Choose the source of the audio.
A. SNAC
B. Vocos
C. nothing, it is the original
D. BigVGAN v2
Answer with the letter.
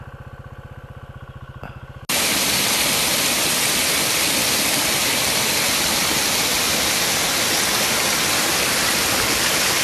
C